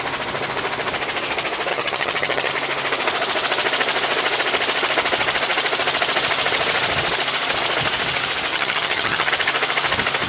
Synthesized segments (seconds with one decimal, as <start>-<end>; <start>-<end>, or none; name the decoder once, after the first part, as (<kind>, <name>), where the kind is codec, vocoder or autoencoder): 1.7-2.5 (vocoder, HiFi-GAN); 8.5-9.3

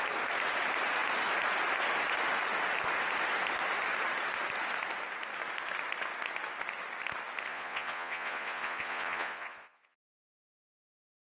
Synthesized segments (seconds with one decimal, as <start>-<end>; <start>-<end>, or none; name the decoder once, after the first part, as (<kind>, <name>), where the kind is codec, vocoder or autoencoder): 7.5-10.5 (vocoder, Vocos)

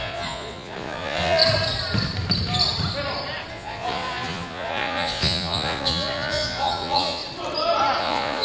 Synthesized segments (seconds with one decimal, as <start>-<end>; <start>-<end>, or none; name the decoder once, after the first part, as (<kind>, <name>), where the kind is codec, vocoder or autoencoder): 0.0-1.4 (vocoder, Vocos); 3.5-7.2; 8.0-8.4

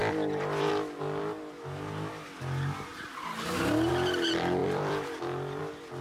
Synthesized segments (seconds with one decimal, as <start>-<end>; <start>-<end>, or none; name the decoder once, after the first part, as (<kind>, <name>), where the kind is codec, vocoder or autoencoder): 0.0-0.7 (vocoder, BigVGAN v2); 4.6-5.6

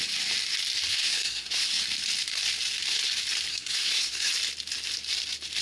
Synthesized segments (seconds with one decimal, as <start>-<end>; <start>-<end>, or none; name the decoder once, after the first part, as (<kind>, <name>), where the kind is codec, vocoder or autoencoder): 0.9-1.8 (codec, SNAC); 3.5-4.3